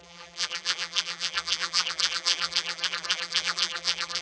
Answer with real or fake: fake